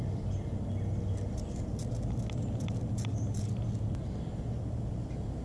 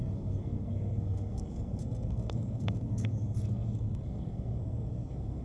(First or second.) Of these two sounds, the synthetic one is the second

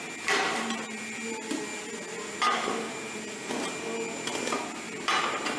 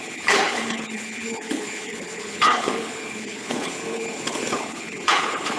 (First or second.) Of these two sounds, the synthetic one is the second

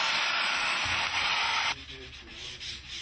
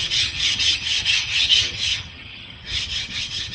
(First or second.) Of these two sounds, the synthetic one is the second